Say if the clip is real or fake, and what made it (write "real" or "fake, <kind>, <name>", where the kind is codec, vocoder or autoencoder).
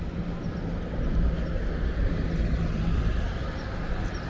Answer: real